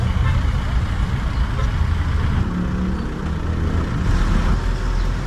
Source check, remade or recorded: recorded